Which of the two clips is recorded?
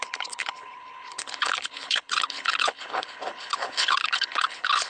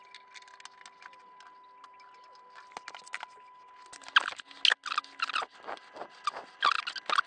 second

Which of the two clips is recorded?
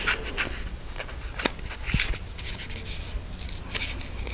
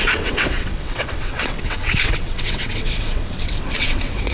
first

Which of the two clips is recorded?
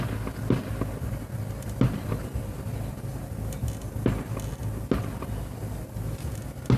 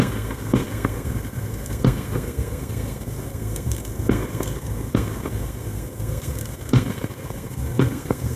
first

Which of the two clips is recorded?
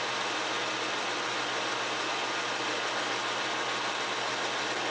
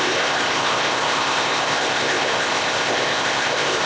first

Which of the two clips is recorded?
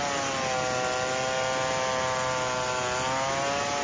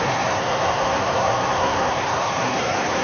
first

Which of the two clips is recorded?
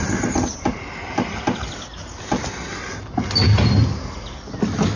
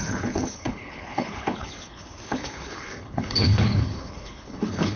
first